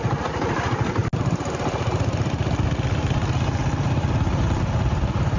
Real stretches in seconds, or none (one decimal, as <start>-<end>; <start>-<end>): 0.0-5.4